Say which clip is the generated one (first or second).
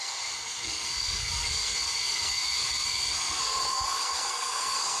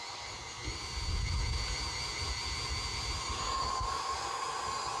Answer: first